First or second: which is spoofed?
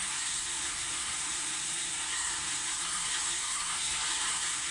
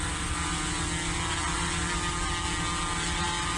first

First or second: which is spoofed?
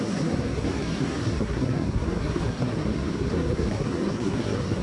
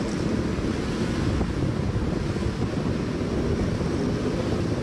first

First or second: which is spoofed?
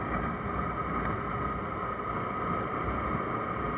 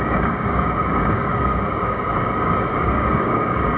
second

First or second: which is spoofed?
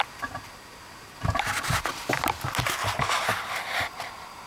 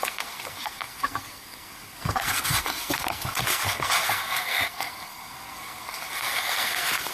second